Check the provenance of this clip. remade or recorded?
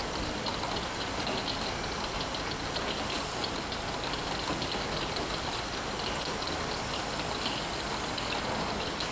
recorded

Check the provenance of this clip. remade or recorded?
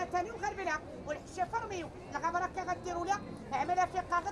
recorded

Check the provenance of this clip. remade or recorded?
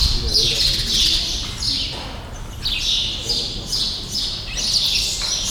recorded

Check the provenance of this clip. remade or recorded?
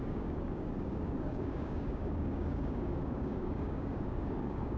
remade